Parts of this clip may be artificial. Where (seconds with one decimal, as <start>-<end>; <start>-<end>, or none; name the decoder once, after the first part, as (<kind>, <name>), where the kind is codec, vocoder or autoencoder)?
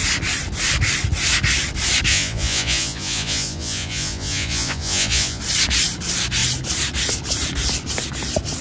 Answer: 2.1-5.4 (vocoder, Vocos)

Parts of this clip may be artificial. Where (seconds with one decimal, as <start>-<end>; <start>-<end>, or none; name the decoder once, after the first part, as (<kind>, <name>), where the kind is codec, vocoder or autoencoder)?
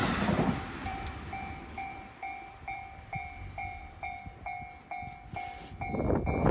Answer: 0.9-4.2 (vocoder, BigVGAN v2)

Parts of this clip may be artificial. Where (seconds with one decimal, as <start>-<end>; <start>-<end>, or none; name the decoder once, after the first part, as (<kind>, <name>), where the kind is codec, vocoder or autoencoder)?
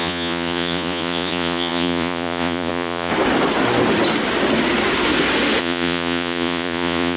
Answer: 0.0-3.1 (vocoder, Vocos); 5.6-7.2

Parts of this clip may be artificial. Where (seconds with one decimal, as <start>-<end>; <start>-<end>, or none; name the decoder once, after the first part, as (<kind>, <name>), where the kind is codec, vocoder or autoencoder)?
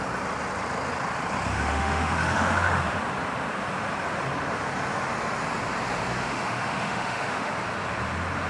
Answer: 1.5-3.0 (autoencoder, DAC-VAE); 6.2-7.5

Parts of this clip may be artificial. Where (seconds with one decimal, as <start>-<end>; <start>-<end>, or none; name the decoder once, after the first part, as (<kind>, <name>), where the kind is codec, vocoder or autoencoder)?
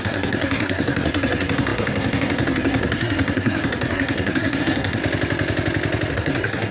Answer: 0.0-5.0 (codec, SNAC); 6.1-6.7